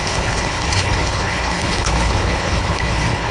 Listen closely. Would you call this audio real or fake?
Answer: fake